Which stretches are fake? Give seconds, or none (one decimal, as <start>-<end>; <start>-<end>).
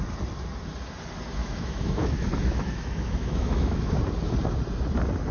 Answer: 1.4-4.0